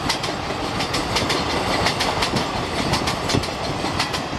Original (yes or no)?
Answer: yes